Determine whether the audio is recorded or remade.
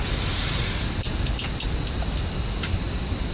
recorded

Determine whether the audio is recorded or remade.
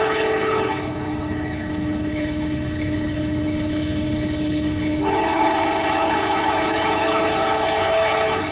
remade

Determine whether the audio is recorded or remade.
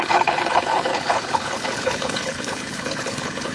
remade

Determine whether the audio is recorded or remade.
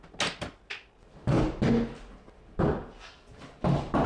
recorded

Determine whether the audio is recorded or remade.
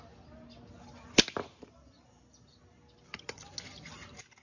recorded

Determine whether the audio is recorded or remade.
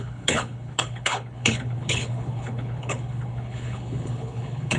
remade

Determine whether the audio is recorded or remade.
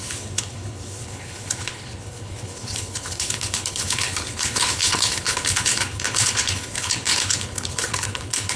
remade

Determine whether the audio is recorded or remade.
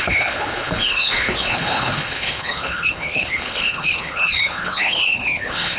remade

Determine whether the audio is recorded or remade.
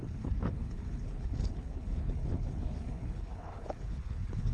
remade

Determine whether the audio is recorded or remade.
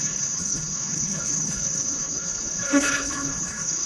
remade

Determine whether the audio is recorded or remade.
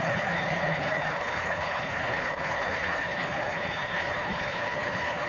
remade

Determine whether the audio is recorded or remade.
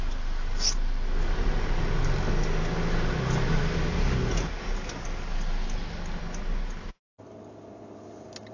recorded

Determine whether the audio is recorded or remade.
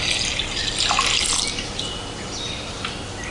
recorded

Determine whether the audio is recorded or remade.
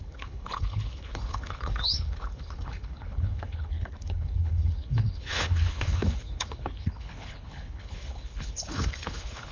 remade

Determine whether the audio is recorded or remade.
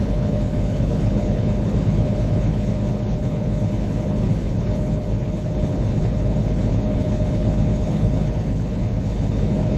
remade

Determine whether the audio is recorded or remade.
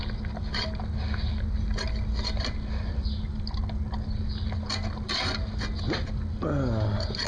recorded